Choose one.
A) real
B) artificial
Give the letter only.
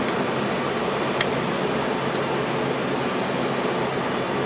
A